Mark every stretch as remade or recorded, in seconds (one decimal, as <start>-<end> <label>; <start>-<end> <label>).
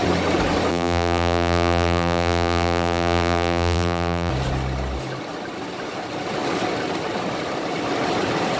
0.0-0.7 recorded; 0.7-4.3 remade; 4.3-8.6 recorded